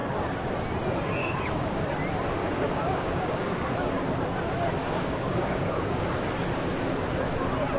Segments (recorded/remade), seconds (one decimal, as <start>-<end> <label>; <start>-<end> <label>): 0.0-1.2 recorded; 1.2-1.8 remade; 1.8-2.4 recorded; 2.4-3.9 remade; 3.9-4.8 recorded; 4.8-6.1 remade; 6.1-7.8 recorded